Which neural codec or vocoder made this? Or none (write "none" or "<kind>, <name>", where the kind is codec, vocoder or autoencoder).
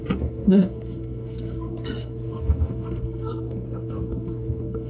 codec, SNAC